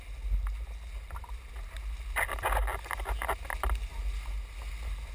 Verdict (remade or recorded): recorded